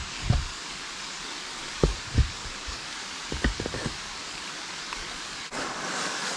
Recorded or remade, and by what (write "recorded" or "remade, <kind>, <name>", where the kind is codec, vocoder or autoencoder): remade, codec, DAC